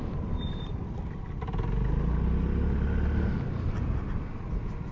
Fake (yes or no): no